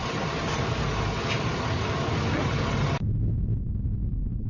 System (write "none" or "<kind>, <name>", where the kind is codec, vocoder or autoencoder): none